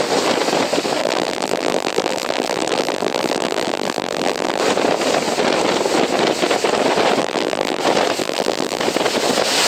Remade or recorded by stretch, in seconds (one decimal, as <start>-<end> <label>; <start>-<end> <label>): 0.0-1.0 recorded; 1.0-4.6 remade; 4.6-7.2 recorded; 7.2-7.8 remade; 7.8-8.2 recorded; 8.2-8.8 remade; 8.8-9.7 recorded